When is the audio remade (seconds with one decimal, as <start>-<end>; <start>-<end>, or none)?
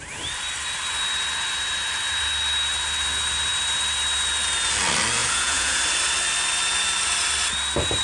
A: 5.2-5.8